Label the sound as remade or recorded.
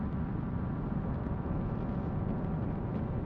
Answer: recorded